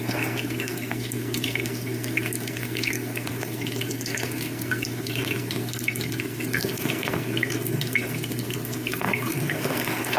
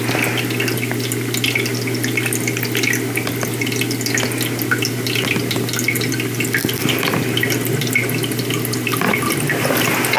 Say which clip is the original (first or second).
second